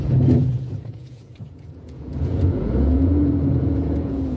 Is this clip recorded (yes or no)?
no